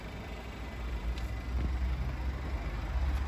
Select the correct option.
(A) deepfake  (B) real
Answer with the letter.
B